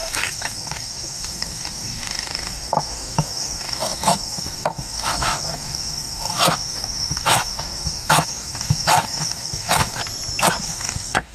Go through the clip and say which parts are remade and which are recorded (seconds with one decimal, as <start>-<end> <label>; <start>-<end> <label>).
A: 0.0-10.0 remade; 10.0-10.6 recorded; 10.6-11.3 remade